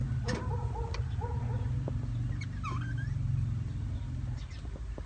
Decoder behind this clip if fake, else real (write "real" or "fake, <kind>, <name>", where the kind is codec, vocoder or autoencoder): real